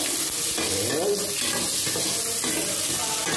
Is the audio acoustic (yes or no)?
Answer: yes